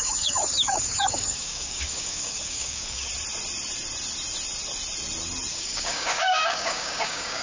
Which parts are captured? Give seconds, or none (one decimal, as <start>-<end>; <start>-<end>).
3.1-5.5